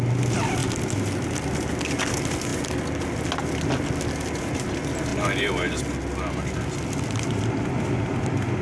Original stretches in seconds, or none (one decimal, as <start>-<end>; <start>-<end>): 0.0-8.6